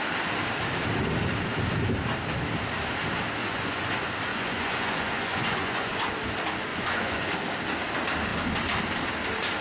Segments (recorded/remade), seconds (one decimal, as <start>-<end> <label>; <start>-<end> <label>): 0.0-3.4 recorded; 3.4-3.9 remade; 3.9-4.3 recorded; 4.3-6.0 remade; 6.0-6.7 recorded; 6.7-7.3 remade; 7.3-9.6 recorded